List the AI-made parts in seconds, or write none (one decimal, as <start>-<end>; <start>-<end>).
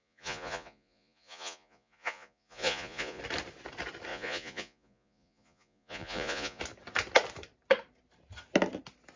0.0-3.2; 4.1-6.6